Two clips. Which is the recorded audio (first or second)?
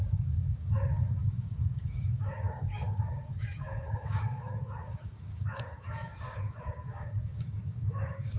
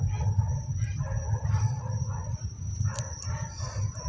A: second